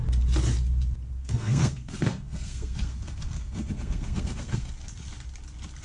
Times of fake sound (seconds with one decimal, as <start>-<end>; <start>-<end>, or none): 1.2-4.7